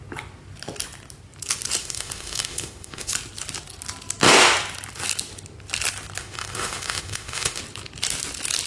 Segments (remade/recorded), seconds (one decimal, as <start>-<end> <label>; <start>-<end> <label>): 0.0-1.8 recorded; 1.8-3.1 remade; 3.1-6.2 recorded; 6.2-7.6 remade; 7.6-8.7 recorded